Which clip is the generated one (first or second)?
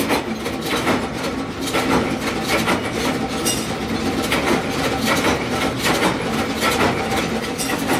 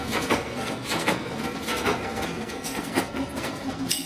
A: second